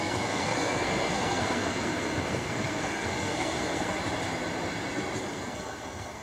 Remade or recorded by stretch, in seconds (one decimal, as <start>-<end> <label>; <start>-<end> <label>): 0.0-4.0 remade; 4.0-5.2 recorded; 5.2-6.2 remade